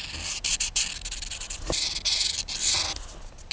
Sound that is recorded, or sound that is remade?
recorded